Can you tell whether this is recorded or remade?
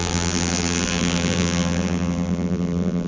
remade